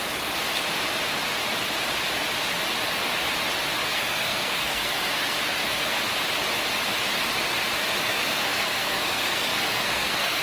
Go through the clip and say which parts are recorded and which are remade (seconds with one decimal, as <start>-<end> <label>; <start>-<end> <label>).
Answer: 0.0-3.9 recorded; 3.9-6.0 remade; 6.0-8.1 recorded; 8.1-10.4 remade